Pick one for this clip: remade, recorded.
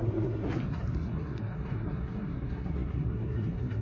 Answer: remade